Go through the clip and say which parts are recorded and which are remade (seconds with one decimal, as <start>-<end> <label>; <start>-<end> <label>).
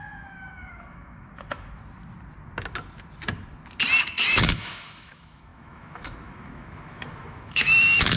0.0-1.8 remade; 1.8-4.0 recorded; 4.0-8.2 remade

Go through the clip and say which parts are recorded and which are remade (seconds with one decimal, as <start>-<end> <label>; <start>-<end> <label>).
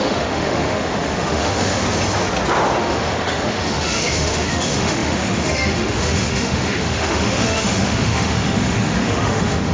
0.0-1.8 remade; 1.8-2.8 recorded; 2.8-9.7 remade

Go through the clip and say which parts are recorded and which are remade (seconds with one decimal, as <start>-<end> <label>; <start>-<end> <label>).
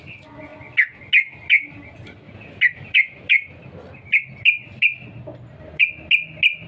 0.0-6.7 recorded